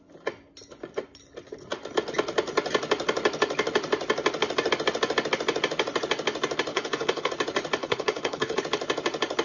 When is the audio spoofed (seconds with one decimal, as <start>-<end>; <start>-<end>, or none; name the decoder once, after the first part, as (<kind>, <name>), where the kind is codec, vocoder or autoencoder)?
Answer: 6.7-7.3 (codec, HILCodec); 7.8-8.6